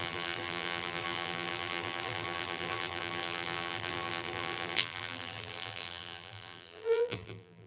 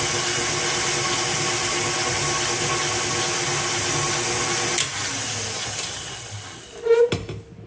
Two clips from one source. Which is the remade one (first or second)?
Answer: first